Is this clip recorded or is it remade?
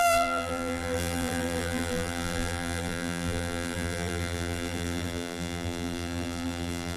remade